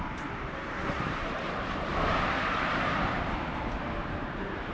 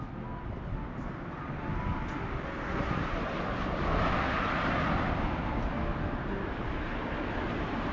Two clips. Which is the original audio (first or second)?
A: second